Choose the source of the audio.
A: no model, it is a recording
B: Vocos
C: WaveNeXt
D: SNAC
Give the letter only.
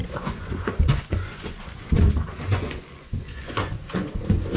B